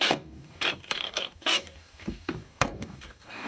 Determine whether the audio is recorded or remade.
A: remade